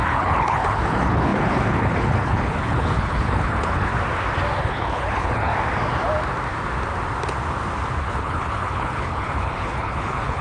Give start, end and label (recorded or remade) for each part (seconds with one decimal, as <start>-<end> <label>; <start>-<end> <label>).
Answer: 0.0-3.9 remade; 3.9-4.6 recorded; 4.6-5.5 remade; 5.5-8.0 recorded; 8.0-10.4 remade